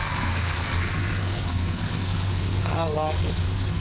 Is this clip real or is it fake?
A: fake